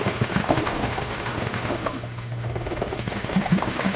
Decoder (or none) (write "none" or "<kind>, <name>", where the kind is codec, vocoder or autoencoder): autoencoder, DAC-VAE